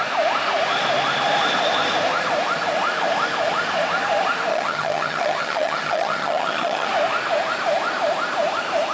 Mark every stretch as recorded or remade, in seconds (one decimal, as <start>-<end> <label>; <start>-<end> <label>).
0.0-4.5 recorded; 4.5-6.9 remade; 6.9-8.9 recorded